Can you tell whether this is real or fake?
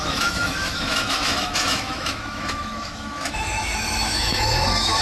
fake